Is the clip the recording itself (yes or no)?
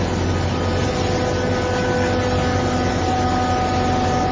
yes